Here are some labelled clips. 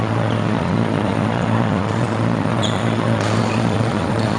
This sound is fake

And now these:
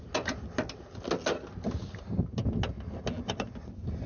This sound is real